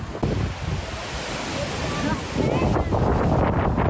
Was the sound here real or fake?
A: real